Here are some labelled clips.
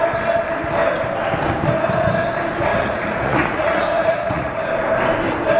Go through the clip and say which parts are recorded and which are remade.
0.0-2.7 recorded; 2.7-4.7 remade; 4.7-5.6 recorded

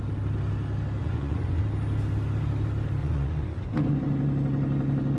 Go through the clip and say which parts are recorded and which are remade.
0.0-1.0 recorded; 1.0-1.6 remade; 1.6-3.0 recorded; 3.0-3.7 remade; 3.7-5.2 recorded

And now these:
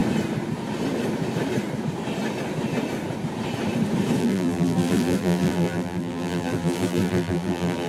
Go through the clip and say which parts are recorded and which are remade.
0.0-4.2 recorded; 4.2-7.9 remade

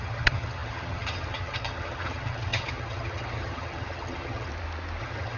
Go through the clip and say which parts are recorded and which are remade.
0.0-4.5 remade; 4.5-5.0 recorded; 5.0-5.4 remade